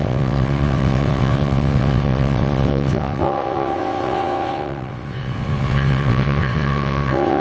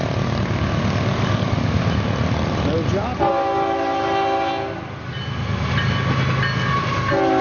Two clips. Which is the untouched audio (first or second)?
second